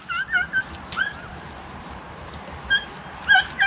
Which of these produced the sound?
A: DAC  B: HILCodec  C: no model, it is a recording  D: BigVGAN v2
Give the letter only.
C